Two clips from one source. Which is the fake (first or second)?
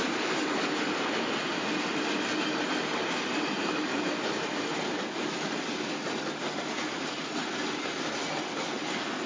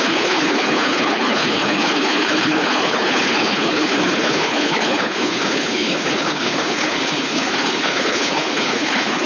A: second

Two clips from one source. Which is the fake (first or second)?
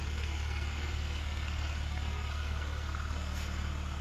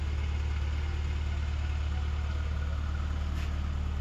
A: first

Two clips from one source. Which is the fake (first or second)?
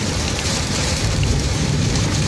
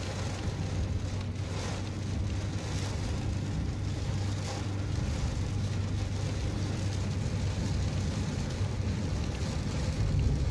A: first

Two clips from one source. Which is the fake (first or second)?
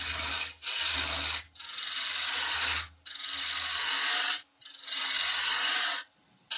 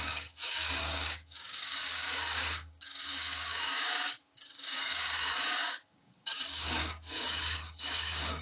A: second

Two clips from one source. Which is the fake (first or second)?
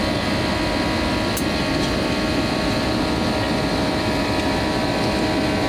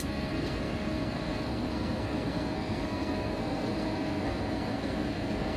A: second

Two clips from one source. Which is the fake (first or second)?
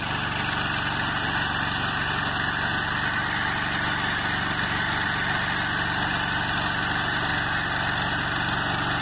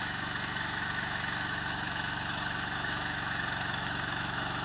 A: second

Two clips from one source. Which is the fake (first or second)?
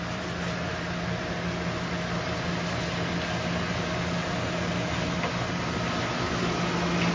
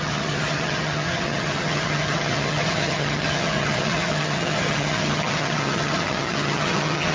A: second